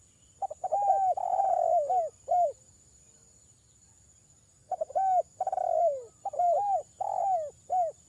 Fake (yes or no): no